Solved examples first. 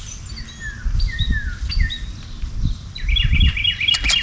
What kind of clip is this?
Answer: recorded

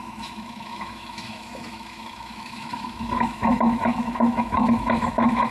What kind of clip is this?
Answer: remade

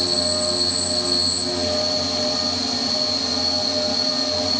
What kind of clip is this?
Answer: recorded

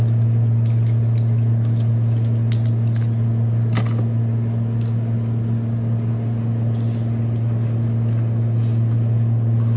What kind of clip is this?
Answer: recorded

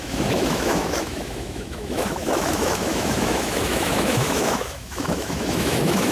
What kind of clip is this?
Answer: remade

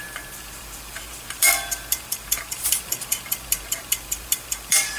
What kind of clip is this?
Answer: remade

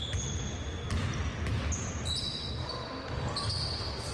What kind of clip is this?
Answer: recorded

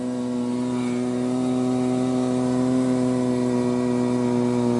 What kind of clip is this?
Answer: recorded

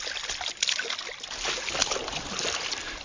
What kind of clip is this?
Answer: recorded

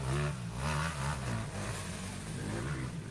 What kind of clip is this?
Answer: recorded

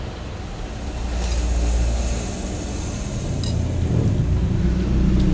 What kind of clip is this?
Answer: recorded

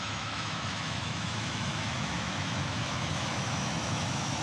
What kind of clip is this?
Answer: remade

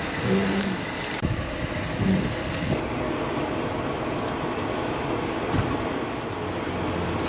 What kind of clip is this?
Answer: recorded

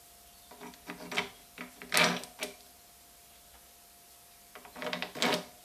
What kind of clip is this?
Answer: recorded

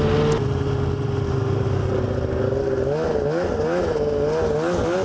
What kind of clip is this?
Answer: recorded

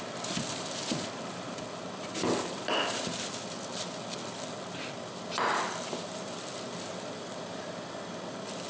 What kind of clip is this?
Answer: recorded